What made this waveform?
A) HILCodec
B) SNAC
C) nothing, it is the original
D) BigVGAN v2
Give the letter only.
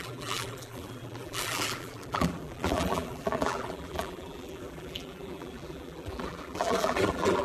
D